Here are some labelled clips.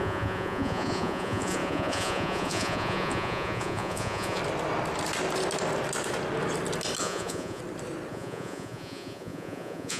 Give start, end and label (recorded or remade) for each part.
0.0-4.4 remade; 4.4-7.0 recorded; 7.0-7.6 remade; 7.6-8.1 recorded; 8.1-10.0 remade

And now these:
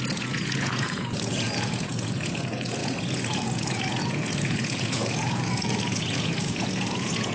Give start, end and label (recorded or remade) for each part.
0.0-7.3 remade

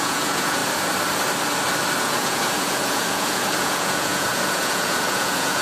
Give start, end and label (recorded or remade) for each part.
0.0-0.6 remade; 0.6-2.0 recorded; 2.0-5.6 remade

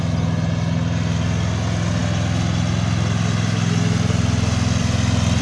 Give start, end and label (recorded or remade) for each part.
0.0-5.4 recorded

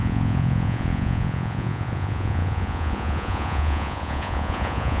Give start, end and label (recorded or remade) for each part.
0.0-5.0 remade

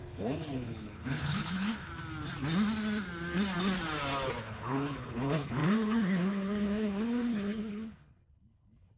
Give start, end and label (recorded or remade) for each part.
0.0-1.9 remade; 1.9-4.4 recorded; 4.4-9.0 remade

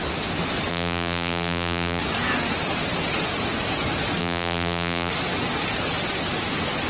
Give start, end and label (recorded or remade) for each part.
0.0-0.7 recorded; 0.7-2.0 remade; 2.0-4.2 recorded; 4.2-5.1 remade; 5.1-6.9 recorded